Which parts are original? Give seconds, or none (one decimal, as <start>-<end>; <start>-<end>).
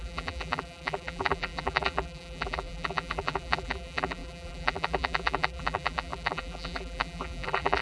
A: none